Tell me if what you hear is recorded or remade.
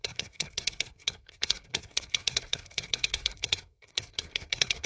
remade